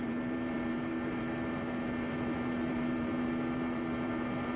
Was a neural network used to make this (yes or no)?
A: yes